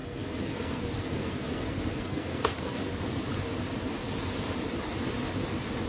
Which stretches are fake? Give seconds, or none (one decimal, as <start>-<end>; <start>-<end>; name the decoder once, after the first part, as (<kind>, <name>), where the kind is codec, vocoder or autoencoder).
0.0-2.9 (codec, SNAC)